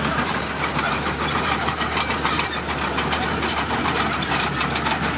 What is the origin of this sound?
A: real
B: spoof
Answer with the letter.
B